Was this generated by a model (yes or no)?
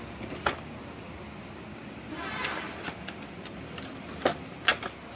no